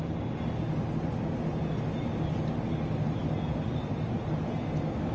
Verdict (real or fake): real